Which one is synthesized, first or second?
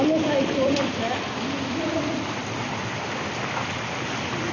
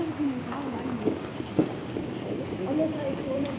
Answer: second